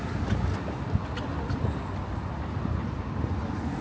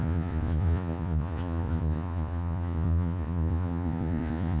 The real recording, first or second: first